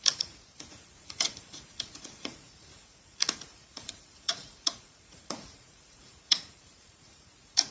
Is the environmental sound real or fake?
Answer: fake